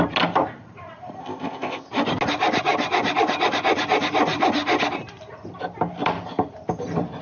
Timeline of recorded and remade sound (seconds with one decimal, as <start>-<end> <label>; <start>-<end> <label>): 0.0-1.2 recorded; 1.2-1.9 remade; 1.9-7.2 recorded